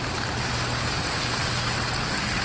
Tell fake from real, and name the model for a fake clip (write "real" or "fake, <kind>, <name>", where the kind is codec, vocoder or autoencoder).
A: real